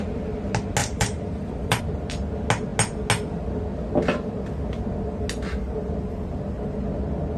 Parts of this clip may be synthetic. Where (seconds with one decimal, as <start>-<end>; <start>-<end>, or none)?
0.8-1.8